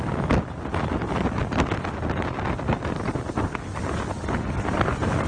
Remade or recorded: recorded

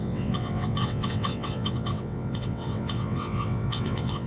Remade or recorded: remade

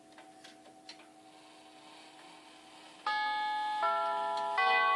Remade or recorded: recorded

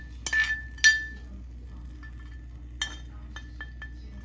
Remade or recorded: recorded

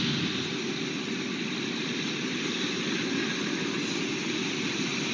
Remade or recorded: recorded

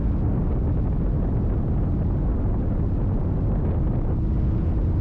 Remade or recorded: recorded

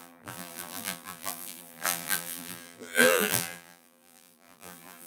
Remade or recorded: remade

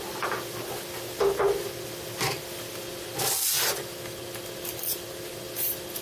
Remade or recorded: recorded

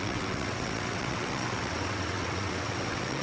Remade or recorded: remade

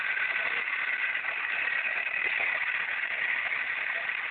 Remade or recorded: recorded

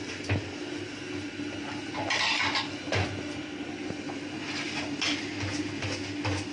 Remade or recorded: recorded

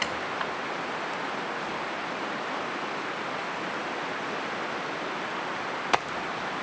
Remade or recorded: recorded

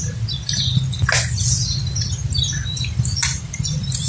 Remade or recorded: recorded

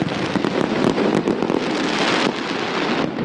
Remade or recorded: recorded